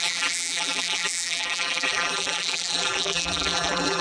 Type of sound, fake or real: fake